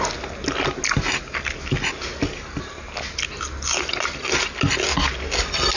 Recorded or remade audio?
recorded